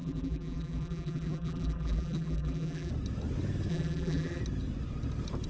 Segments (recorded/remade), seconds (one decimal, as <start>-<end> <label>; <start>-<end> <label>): 0.0-2.9 remade; 2.9-3.7 recorded; 3.7-4.4 remade; 4.4-5.5 recorded